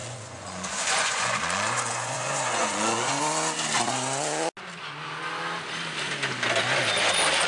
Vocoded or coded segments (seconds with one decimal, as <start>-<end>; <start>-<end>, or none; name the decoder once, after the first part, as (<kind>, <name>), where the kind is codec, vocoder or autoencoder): 0.0-3.2 (vocoder, Vocos)